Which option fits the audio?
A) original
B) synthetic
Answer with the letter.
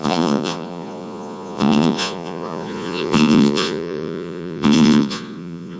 B